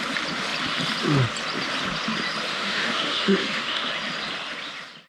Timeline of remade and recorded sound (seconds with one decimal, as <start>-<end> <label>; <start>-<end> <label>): 0.0-2.5 recorded; 2.5-3.9 remade; 3.9-5.1 recorded